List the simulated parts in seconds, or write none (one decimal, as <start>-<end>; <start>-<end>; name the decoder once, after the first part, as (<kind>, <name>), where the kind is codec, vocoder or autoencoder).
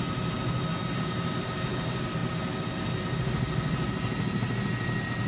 none